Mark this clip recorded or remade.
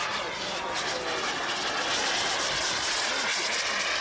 recorded